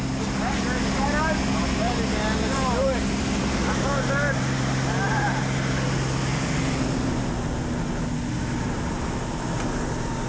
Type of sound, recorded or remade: recorded